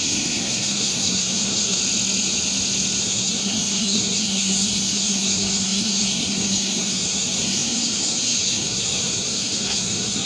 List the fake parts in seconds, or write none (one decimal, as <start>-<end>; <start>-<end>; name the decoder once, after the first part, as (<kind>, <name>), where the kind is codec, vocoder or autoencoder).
0.0-1.8 (codec, SNAC); 3.0-10.3